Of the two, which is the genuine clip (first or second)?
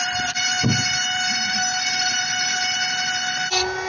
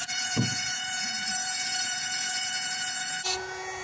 first